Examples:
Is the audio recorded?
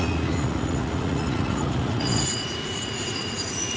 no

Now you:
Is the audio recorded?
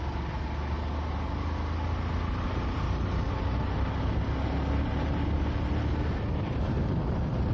yes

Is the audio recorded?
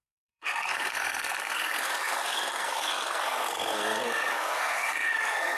no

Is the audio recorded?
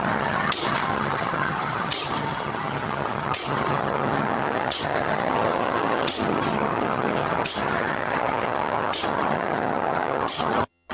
no